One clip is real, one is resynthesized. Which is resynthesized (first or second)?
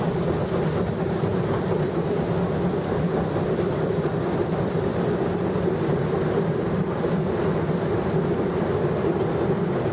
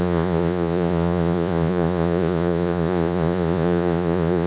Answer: second